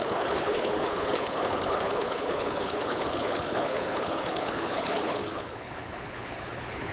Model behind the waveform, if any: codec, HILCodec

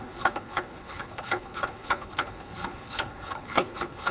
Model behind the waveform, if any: codec, HILCodec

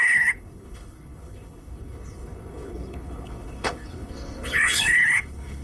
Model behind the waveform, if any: codec, HILCodec